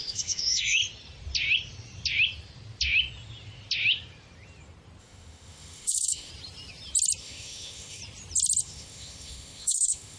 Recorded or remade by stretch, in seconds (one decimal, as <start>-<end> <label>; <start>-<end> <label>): 0.0-0.8 remade; 0.8-5.0 recorded; 5.0-6.3 remade; 6.3-7.2 recorded; 7.2-8.0 remade; 8.0-8.6 recorded; 8.6-10.2 remade